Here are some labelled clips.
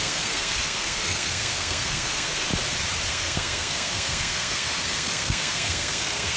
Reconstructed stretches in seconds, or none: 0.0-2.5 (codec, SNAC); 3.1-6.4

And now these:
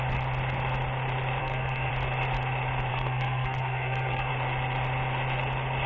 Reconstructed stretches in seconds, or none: 1.4-1.9 (codec, SNAC); 2.9-4.3

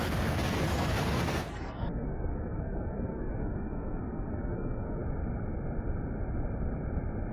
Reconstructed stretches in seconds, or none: 0.0-5.0 (codec, SNAC)

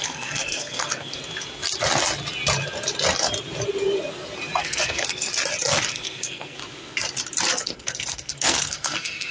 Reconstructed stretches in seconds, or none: 0.0-1.2 (codec, SNAC); 4.6-5.3; 5.8-6.6; 7.6-9.3

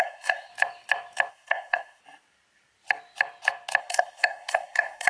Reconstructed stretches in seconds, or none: 0.0-0.5 (codec, SNAC); 1.3-2.0; 3.8-5.1

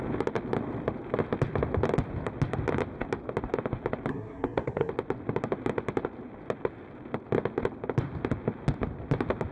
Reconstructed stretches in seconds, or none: 4.1-4.9 (codec, SNAC)

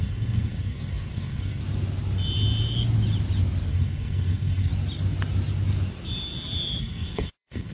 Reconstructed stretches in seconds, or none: 0.0-1.6 (codec, SNAC); 3.7-4.7; 6.8-7.7